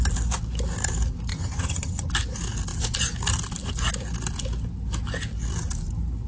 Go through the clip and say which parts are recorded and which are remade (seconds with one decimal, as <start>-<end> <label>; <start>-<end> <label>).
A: 0.0-1.3 recorded; 1.3-2.1 remade; 2.1-6.3 recorded